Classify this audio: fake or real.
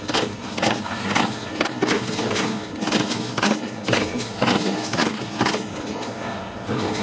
fake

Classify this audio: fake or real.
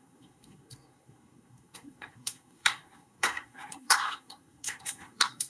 fake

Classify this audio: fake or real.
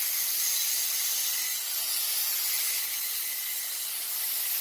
real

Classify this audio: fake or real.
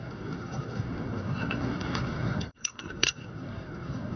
fake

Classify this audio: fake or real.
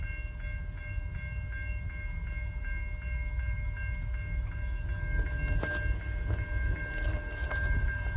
real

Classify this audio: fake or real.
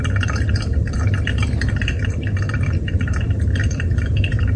fake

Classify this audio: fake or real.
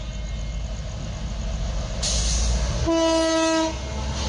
real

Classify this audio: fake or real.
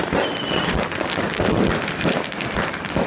real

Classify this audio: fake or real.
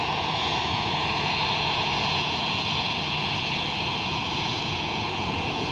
fake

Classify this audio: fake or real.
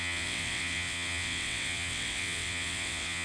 fake